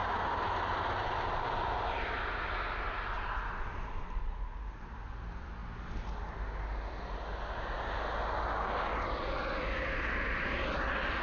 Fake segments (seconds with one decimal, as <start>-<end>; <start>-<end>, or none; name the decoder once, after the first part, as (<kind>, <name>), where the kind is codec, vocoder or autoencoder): 4.2-4.8 (vocoder, Vocos)

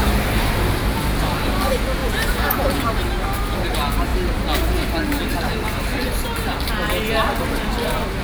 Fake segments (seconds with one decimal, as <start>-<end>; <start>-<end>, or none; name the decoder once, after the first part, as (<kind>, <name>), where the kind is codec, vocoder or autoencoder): 2.0-2.9 (vocoder, Vocos)

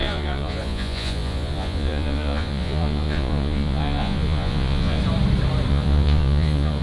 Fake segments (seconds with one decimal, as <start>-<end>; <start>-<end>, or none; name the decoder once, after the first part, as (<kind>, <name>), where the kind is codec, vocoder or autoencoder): 0.0-5.0 (vocoder, Vocos); 5.7-6.8

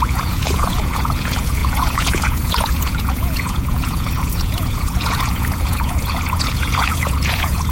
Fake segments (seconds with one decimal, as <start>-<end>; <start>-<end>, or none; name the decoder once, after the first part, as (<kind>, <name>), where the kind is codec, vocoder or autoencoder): 0.0-7.7 (vocoder, Vocos)

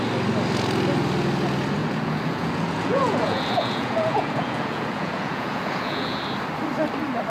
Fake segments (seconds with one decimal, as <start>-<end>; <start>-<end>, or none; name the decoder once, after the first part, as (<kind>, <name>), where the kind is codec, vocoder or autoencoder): 1.8-6.2 (vocoder, Vocos)

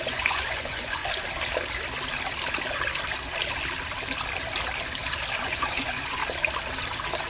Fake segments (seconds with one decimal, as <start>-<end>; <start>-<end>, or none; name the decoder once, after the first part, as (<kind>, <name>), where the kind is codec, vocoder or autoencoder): 0.0-1.0 (vocoder, Vocos); 5.4-6.2